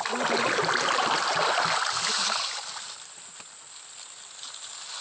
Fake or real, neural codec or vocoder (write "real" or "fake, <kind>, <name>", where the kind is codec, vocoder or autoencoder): real